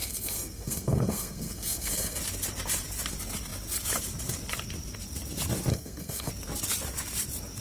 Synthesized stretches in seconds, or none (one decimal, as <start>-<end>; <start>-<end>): 0.0-2.2; 5.7-6.3